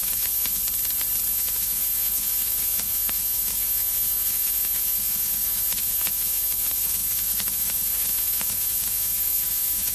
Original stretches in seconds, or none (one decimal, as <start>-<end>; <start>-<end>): 0.6-1.3